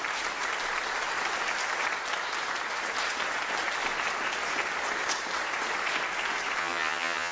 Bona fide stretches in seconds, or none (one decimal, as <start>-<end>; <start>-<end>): 0.0-6.6